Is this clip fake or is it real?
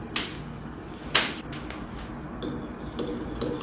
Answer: real